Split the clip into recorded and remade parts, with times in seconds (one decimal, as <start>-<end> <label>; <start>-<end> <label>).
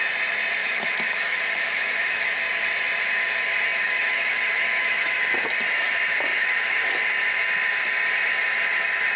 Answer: 0.0-0.6 recorded; 0.6-2.4 remade; 2.4-3.7 recorded; 3.7-5.2 remade; 5.2-6.3 recorded; 6.3-6.9 remade; 6.9-9.2 recorded